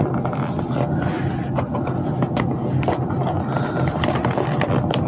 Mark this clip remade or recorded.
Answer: recorded